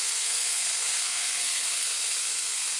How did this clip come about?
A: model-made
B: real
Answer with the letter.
A